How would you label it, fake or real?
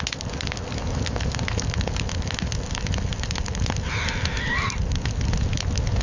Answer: real